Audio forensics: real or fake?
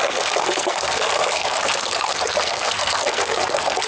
fake